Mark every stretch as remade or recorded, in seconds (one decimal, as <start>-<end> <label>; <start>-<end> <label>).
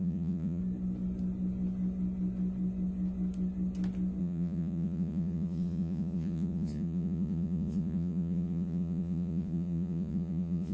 0.0-0.6 remade; 0.6-4.2 recorded; 4.2-10.7 remade